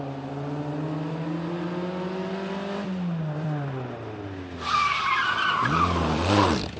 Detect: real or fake real